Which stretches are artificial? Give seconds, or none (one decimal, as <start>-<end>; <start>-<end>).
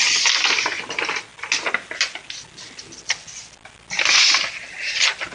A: none